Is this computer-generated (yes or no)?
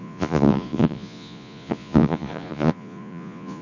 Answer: yes